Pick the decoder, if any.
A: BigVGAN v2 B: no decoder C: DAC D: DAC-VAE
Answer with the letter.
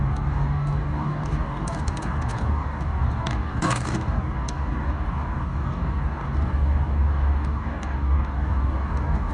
C